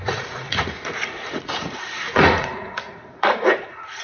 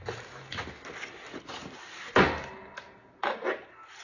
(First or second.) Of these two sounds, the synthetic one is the first